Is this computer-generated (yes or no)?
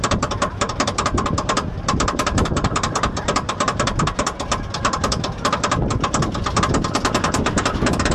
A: yes